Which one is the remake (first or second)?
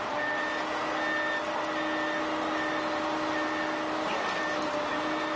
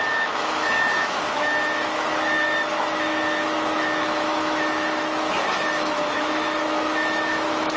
second